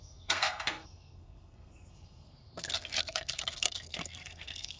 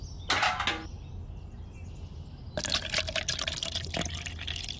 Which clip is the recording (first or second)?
second